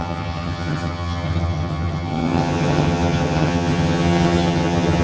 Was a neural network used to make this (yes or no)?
yes